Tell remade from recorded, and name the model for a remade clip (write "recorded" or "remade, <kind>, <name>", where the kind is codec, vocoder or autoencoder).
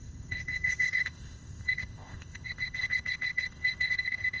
remade, codec, ZipCodec